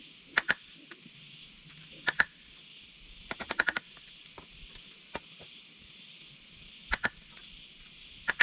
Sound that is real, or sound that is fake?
real